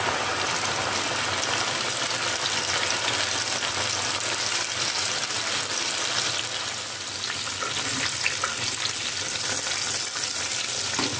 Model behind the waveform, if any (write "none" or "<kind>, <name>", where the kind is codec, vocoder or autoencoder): none